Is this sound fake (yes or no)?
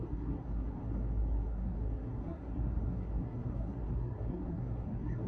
yes